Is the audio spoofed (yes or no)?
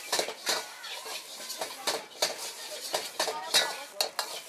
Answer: no